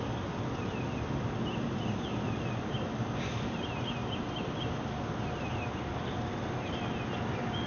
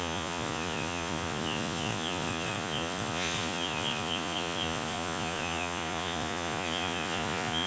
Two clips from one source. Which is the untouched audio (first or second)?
first